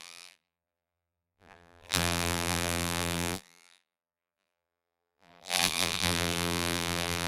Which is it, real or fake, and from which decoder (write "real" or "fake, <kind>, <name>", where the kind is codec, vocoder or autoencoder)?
fake, vocoder, BigVGAN v2